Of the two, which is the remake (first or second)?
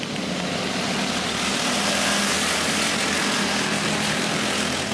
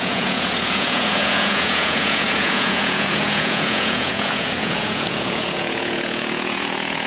second